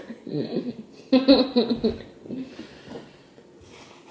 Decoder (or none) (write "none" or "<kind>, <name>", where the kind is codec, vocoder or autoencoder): none